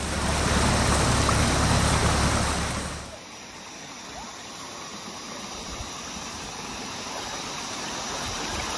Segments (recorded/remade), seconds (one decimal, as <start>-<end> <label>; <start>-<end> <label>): 0.0-4.9 recorded; 4.9-7.9 remade; 7.9-8.8 recorded